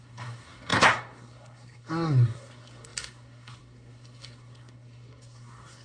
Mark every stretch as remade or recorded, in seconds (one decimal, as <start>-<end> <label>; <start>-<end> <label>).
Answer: 0.0-5.8 remade